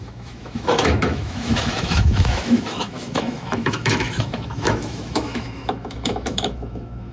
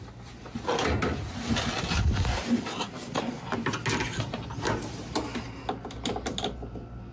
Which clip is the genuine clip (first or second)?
second